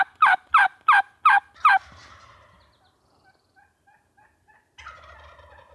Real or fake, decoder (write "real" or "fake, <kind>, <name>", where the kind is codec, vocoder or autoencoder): real